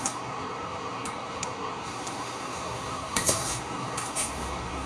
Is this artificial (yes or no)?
yes